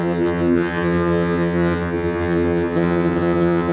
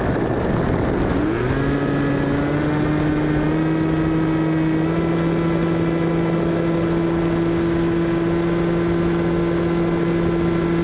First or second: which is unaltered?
second